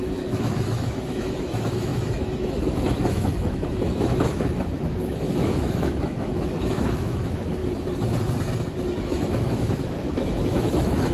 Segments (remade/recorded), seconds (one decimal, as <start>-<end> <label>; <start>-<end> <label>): 0.0-7.6 remade; 7.6-9.0 recorded; 9.0-11.1 remade